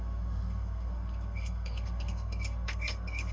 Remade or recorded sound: remade